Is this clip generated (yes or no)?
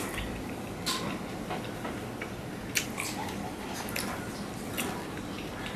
no